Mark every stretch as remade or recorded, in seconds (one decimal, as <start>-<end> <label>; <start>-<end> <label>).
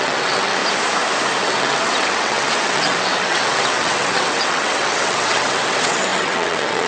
0.0-0.6 remade; 0.6-1.4 recorded; 1.4-6.9 remade